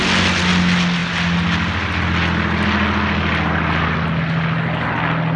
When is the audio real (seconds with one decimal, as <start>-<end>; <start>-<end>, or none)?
0.0-5.4